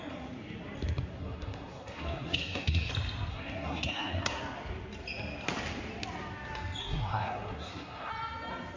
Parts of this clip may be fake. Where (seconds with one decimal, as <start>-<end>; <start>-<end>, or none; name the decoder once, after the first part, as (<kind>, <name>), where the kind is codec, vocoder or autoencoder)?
1.2-2.9 (codec, SNAC); 3.3-4.4; 6.8-8.1